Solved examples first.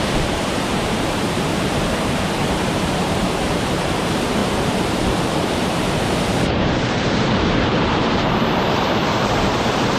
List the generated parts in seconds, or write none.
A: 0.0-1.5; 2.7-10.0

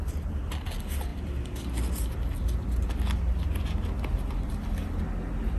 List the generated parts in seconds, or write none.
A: none

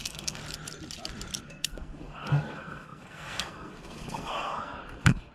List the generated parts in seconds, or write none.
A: 0.0-0.4; 1.4-5.3